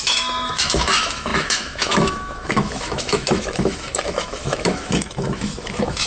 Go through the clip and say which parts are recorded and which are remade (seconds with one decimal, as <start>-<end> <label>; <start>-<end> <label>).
0.0-6.1 remade